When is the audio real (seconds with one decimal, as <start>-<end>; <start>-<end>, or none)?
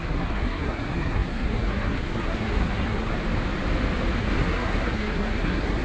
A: 3.1-4.2